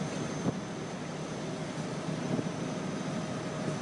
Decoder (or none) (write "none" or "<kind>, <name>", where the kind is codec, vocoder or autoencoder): none